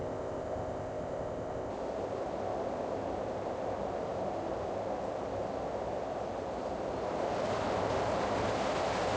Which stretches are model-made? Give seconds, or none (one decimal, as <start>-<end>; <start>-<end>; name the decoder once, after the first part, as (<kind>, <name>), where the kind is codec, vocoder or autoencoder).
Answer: 0.0-1.7 (codec, ZipCodec)